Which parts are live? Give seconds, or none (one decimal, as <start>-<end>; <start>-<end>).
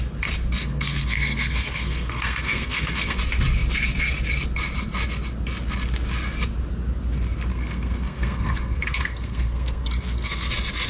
0.0-0.6; 3.2-7.5; 10.5-10.9